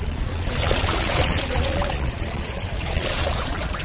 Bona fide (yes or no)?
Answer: no